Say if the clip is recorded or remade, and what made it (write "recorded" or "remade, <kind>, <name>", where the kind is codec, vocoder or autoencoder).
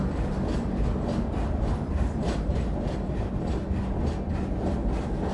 recorded